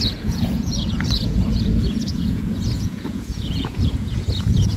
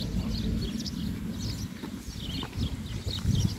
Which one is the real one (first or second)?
second